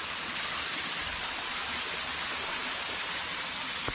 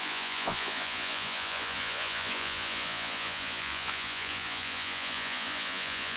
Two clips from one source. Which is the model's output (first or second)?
second